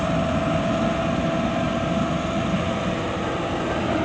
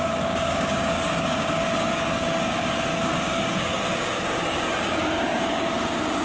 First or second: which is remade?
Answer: second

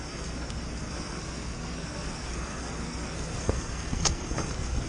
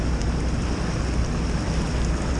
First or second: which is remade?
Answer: first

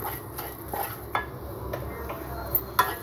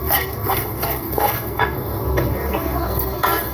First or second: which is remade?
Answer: second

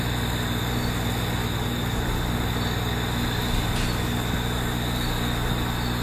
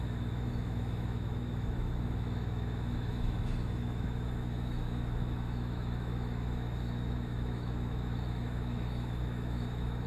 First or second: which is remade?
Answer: second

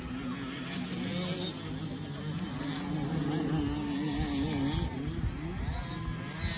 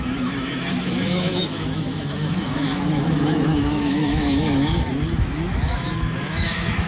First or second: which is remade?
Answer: second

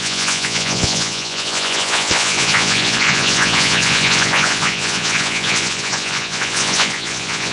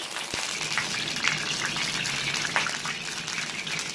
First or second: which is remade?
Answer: first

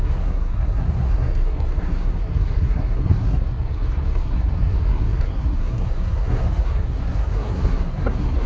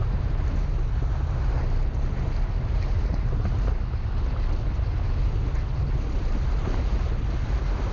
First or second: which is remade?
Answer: first